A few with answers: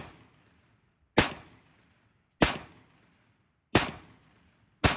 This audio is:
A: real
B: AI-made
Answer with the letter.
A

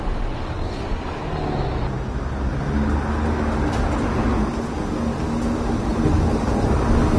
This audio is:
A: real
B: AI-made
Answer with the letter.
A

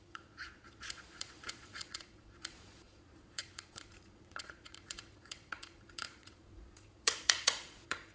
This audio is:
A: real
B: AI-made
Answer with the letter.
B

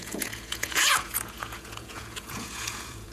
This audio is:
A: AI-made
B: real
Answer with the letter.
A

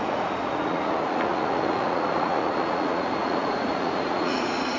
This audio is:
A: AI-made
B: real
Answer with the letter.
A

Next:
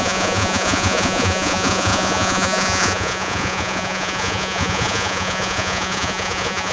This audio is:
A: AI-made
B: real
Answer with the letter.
A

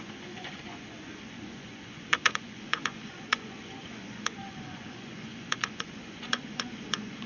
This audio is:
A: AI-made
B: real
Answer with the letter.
A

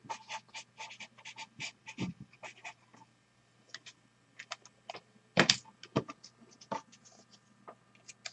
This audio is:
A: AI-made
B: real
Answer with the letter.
B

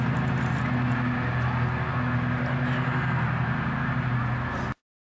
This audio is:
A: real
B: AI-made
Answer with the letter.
A